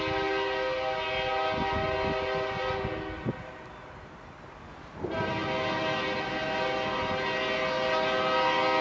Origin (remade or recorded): recorded